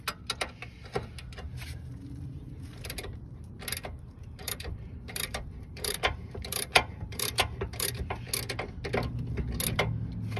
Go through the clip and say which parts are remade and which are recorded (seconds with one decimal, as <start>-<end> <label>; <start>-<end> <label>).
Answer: 0.0-1.5 recorded; 1.5-3.5 remade; 3.5-4.4 recorded; 4.4-8.3 remade; 8.3-10.4 recorded